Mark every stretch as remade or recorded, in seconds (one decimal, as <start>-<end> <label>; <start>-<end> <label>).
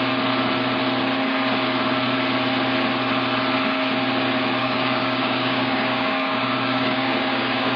0.0-4.6 recorded; 4.6-7.8 remade